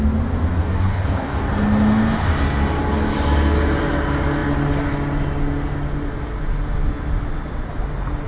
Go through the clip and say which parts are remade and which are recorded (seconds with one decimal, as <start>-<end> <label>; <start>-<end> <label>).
0.0-0.6 recorded; 0.6-1.5 remade; 1.5-8.3 recorded